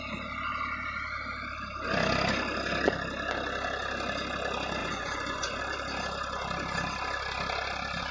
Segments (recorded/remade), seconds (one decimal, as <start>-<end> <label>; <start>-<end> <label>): 0.0-4.8 recorded; 4.8-5.6 remade; 5.6-8.1 recorded